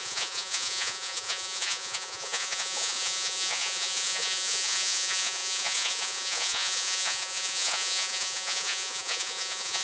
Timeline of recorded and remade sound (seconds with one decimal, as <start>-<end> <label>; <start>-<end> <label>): 0.0-9.8 remade